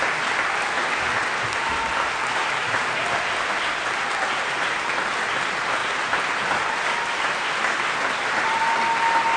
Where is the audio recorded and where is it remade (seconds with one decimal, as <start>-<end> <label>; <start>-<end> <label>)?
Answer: 0.0-0.8 recorded; 0.8-3.0 remade; 3.0-9.4 recorded